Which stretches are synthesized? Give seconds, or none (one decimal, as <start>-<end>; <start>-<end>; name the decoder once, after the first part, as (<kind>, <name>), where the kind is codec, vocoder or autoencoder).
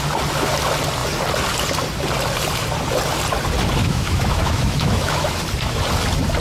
3.8-5.4 (autoencoder, DAC-VAE)